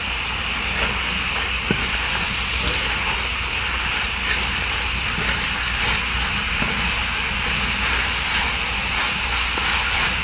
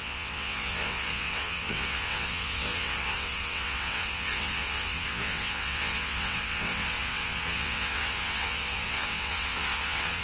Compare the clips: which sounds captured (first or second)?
first